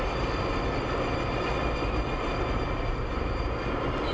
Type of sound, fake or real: real